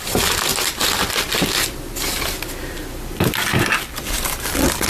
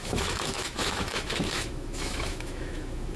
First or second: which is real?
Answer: first